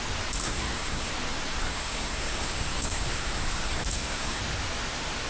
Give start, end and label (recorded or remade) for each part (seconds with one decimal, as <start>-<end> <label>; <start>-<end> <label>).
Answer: 0.0-0.4 recorded; 0.4-1.1 remade; 1.1-1.6 recorded; 1.6-4.4 remade; 4.4-5.3 recorded